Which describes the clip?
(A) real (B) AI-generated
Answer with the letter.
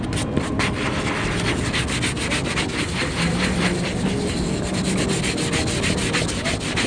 A